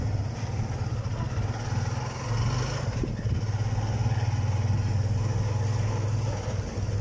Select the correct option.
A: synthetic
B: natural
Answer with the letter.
B